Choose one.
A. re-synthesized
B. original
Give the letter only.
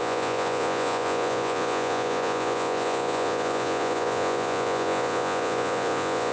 A